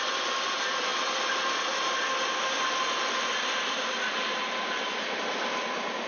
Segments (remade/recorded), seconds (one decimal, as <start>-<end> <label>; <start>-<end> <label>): 0.0-6.1 recorded